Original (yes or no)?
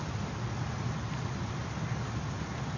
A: yes